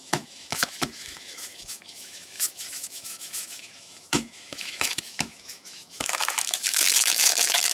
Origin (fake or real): fake